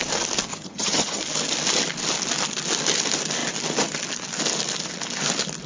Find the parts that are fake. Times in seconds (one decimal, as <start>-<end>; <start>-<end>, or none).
0.5-1.2